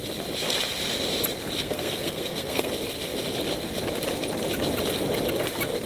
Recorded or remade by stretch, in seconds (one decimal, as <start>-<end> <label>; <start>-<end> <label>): 0.0-1.6 recorded; 1.6-2.7 remade; 2.7-5.9 recorded